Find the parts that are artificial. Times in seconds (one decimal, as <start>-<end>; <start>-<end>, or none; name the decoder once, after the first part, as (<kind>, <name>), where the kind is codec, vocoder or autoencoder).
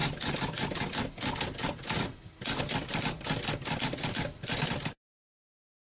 none